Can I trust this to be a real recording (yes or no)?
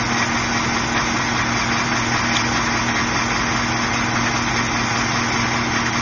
yes